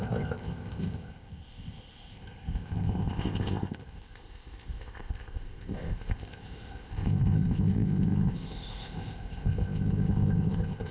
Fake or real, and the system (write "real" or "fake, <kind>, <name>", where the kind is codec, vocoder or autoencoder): fake, codec, ZipCodec